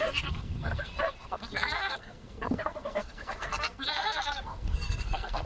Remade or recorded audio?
remade